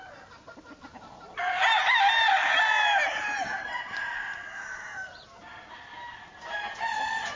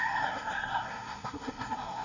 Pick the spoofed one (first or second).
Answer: second